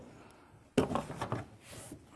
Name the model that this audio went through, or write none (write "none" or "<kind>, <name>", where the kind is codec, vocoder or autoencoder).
none